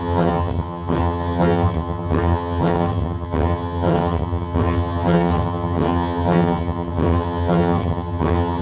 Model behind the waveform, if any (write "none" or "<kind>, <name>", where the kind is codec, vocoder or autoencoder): vocoder, HiFi-GAN